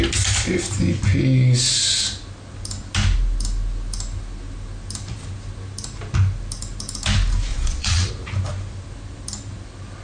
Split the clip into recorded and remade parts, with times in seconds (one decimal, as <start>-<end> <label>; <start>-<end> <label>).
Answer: 0.0-7.5 recorded; 7.5-8.1 remade; 8.1-10.0 recorded